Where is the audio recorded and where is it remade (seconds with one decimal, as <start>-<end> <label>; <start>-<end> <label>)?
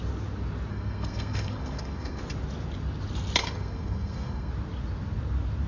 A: 0.0-0.7 recorded; 0.7-2.2 remade; 2.2-3.4 recorded; 3.4-4.5 remade; 4.5-5.7 recorded